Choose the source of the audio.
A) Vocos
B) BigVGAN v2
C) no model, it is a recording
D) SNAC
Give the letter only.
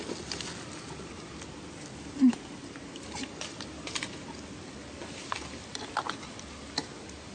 C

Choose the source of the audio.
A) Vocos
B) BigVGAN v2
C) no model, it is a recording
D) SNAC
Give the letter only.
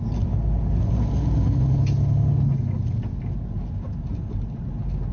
C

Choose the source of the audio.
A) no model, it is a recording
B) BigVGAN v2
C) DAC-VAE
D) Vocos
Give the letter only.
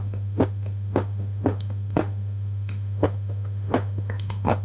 C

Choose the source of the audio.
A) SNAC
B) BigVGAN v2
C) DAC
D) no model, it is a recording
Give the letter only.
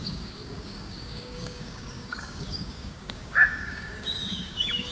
C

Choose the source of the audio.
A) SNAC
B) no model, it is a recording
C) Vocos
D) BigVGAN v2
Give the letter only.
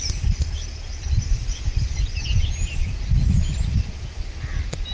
B